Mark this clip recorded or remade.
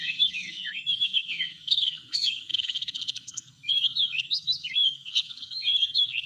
remade